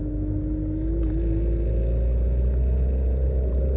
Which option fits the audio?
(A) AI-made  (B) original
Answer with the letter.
B